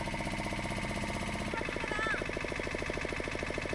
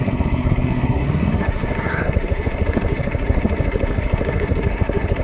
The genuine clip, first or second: first